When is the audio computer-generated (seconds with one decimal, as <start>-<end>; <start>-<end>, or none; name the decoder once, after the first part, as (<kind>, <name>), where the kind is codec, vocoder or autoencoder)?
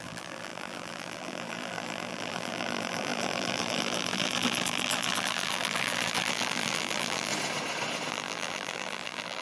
0.0-7.3 (vocoder, BigVGAN v2); 8.1-9.4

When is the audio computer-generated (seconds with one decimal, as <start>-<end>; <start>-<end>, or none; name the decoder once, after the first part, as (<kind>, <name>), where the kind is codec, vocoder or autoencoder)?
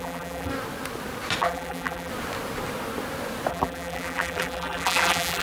0.0-0.5 (vocoder, BigVGAN v2); 1.4-2.1; 3.5-5.4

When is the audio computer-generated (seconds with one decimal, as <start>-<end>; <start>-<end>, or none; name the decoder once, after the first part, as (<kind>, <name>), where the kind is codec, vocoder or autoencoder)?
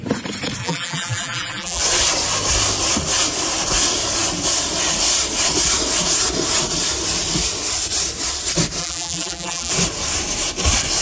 0.6-1.8 (vocoder, BigVGAN v2); 8.8-9.7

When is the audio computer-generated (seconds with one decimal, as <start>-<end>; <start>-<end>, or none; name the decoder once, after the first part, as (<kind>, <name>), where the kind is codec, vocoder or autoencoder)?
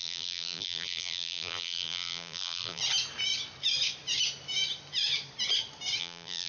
0.0-2.8 (vocoder, BigVGAN v2); 6.0-6.5